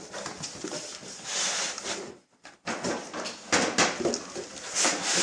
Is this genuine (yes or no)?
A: yes